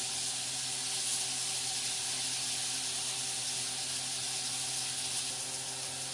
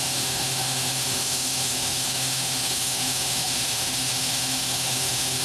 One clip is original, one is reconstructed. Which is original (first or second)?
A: first